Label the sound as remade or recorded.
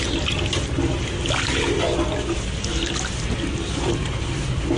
recorded